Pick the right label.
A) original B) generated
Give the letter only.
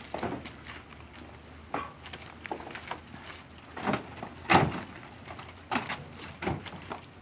A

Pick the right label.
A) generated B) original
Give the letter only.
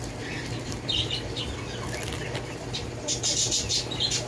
B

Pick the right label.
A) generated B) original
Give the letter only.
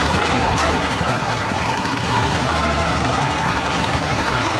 A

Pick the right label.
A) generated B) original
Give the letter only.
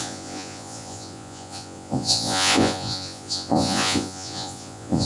A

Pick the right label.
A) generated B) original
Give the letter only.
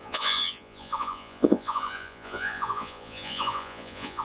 A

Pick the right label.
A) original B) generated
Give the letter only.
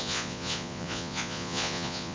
B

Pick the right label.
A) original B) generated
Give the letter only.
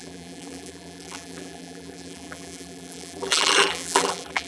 B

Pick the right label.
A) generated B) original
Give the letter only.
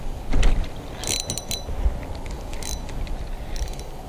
B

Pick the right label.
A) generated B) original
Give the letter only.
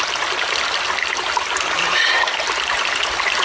B